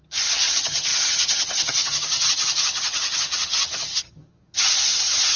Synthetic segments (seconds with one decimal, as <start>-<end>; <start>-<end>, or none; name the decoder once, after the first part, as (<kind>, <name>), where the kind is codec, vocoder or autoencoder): 0.0-5.4 (vocoder, HiFi-GAN)